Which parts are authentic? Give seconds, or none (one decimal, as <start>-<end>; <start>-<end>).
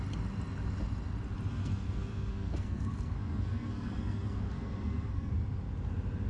0.0-1.5; 5.3-6.3